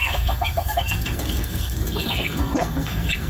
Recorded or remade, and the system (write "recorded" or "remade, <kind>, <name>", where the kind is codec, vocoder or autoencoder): remade, codec, SNAC